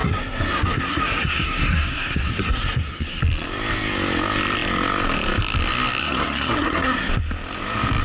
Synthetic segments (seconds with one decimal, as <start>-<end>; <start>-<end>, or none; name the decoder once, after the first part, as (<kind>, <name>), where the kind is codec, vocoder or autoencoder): 0.0-3.2 (codec, SNAC); 6.0-7.1